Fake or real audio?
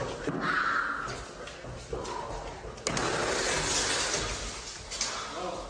real